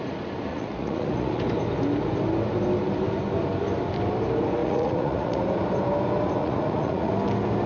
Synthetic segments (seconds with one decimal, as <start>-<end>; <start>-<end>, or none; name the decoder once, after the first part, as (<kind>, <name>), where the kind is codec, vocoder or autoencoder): 0.5-1.4 (vocoder, Vocos); 4.6-5.4; 6.4-7.1